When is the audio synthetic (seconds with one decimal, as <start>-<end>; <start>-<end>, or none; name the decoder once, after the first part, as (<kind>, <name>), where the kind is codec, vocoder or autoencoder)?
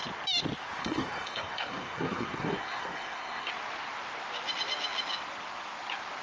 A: 0.8-3.5 (codec, SNAC)